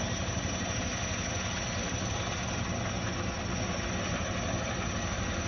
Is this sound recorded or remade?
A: recorded